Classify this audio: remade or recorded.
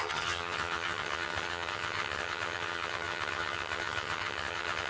remade